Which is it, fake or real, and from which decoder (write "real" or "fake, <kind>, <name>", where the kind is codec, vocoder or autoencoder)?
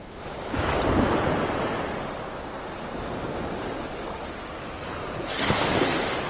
real